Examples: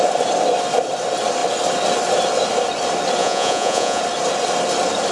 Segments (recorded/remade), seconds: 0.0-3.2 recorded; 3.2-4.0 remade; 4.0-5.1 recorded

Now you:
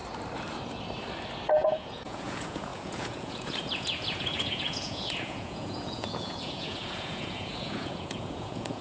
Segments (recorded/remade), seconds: 0.0-1.5 recorded; 1.5-8.8 remade

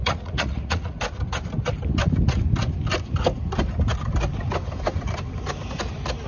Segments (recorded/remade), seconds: 0.0-0.9 remade; 0.9-6.3 recorded

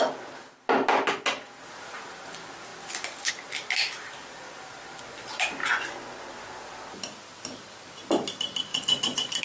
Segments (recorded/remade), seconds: 0.0-5.6 recorded; 5.6-6.6 remade; 6.6-8.7 recorded; 8.7-9.4 remade